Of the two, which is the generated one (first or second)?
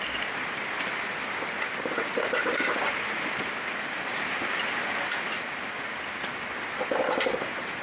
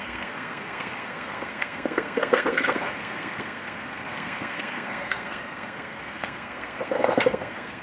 second